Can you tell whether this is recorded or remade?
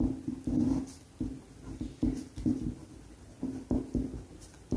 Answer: recorded